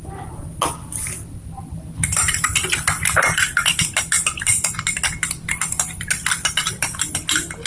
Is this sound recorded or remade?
recorded